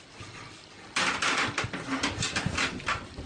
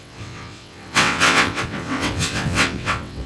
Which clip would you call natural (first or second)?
first